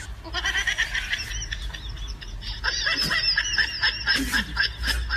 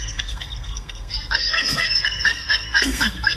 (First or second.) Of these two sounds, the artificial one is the second